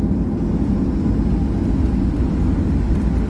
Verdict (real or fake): real